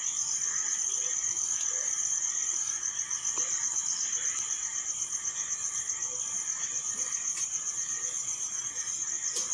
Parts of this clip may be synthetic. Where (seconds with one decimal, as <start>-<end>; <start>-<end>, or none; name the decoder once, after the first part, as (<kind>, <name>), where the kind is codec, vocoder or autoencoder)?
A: 7.3-8.8 (vocoder, Vocos)